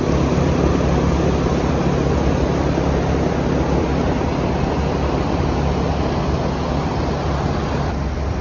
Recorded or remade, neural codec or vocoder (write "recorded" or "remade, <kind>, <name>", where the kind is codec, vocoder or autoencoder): recorded